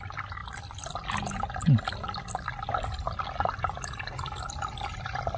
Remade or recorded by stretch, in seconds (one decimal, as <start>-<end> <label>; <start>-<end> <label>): 0.0-5.4 recorded